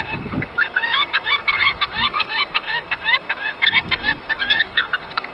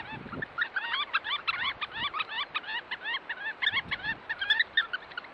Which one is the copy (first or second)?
first